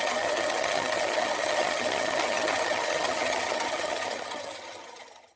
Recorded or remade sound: remade